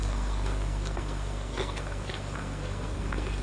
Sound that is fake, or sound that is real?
fake